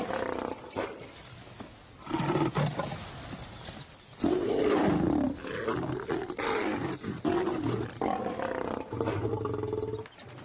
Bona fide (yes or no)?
yes